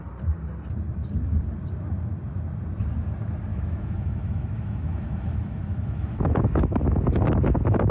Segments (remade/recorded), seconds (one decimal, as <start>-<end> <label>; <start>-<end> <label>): 0.0-3.5 recorded; 3.5-7.0 remade; 7.0-7.9 recorded